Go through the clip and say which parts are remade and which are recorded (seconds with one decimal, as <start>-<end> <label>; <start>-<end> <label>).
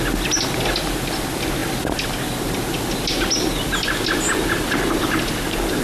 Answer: 0.0-5.8 recorded